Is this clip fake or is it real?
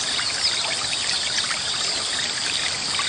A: real